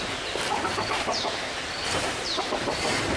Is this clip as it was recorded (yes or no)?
no